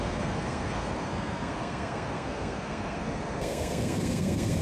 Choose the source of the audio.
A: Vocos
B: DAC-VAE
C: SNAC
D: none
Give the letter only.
C